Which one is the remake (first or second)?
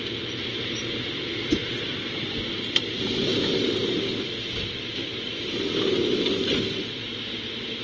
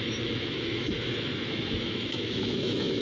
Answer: second